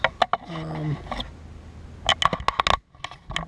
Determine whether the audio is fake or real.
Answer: real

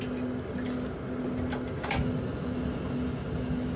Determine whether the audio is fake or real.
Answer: real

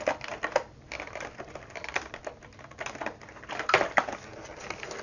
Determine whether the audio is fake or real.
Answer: real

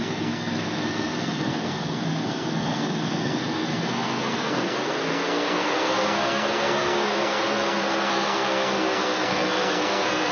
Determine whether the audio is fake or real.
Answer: fake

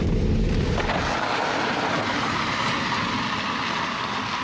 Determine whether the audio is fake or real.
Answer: real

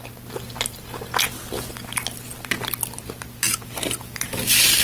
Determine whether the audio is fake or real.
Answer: real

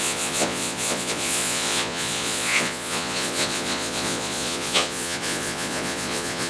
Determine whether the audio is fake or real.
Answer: fake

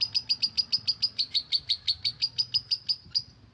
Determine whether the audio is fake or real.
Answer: real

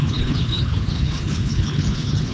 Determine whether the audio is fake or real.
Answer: fake